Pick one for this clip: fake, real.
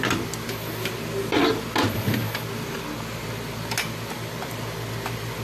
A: real